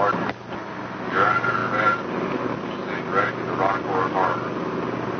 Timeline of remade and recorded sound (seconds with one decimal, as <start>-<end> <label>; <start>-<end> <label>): 0.0-5.2 recorded